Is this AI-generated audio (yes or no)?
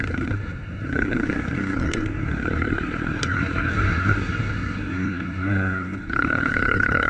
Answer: yes